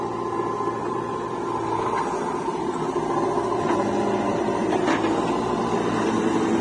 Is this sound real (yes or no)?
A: yes